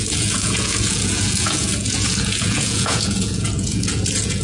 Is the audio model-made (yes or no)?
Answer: yes